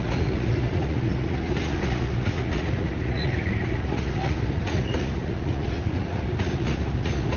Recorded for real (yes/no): no